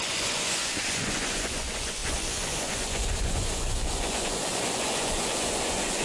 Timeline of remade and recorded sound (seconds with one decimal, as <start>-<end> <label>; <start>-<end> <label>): 0.0-6.0 remade